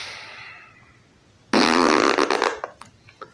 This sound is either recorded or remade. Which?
recorded